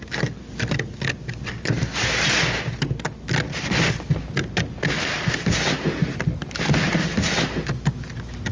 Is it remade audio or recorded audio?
recorded